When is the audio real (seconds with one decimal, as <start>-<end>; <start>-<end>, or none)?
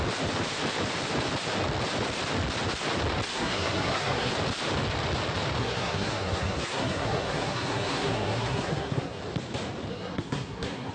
0.0-3.3; 4.3-5.6; 9.2-9.9